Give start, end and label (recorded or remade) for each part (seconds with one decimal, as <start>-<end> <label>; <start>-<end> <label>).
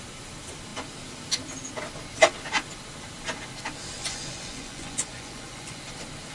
0.0-4.0 recorded; 4.0-5.8 remade; 5.8-6.3 recorded